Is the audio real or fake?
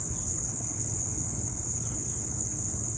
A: fake